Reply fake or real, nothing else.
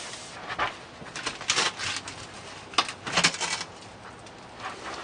real